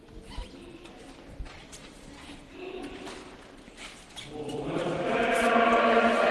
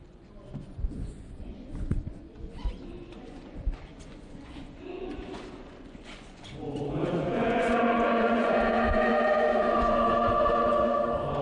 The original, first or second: first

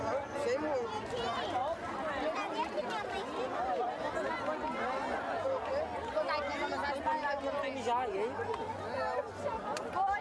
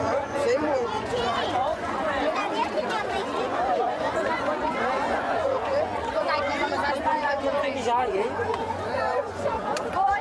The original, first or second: first